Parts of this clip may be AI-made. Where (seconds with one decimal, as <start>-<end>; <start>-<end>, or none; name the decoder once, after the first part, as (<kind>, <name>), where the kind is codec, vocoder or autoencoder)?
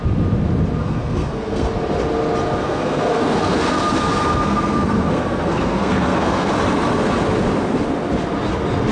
0.8-1.7 (codec, SNAC); 2.6-3.8; 4.2-6.5